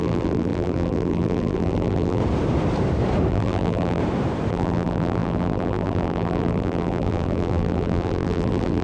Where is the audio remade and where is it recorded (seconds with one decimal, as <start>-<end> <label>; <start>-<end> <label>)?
0.0-2.2 remade; 2.2-3.3 recorded; 3.3-4.0 remade; 4.0-4.5 recorded; 4.5-8.8 remade